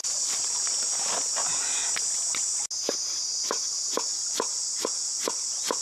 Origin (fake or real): real